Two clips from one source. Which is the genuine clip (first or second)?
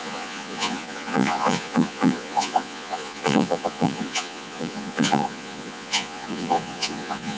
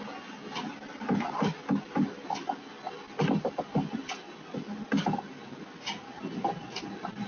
second